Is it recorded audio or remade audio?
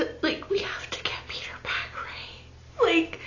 recorded